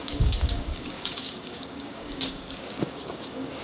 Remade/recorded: remade